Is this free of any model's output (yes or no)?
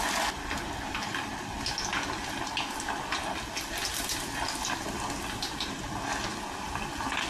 yes